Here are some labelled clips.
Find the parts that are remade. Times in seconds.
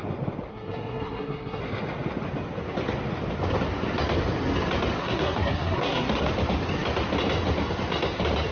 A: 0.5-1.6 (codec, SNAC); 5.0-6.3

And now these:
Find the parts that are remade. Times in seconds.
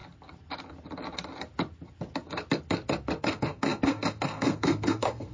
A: 3.2-5.3 (codec, SNAC)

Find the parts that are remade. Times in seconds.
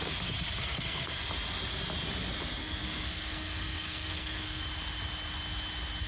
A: 0.6-1.2 (codec, SNAC); 2.6-4.6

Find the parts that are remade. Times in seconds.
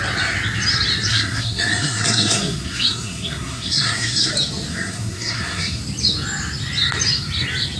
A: 1.1-4.3 (codec, SNAC); 4.7-5.8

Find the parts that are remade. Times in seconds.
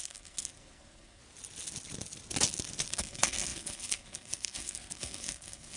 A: 0.0-1.2 (codec, SNAC); 2.9-5.8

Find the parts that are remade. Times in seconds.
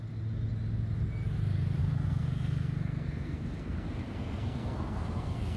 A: 1.8-5.6 (codec, SNAC)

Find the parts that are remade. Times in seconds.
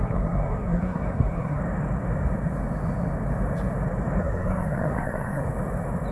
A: 0.0-1.6 (codec, SNAC); 4.2-5.4